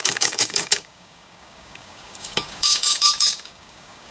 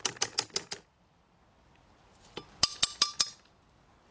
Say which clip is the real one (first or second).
second